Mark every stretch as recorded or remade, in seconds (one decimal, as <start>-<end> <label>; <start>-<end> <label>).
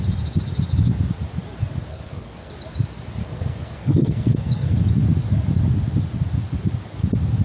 0.0-1.9 recorded; 1.9-2.5 remade; 2.5-3.2 recorded; 3.2-4.8 remade; 4.8-7.4 recorded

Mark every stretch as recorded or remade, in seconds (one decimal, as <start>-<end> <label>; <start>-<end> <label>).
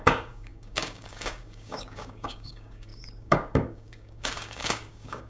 0.0-5.3 remade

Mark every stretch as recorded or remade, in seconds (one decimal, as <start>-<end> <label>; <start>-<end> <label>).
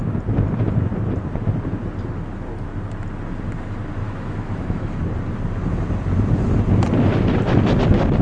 0.0-4.0 recorded; 4.0-5.0 remade; 5.0-8.2 recorded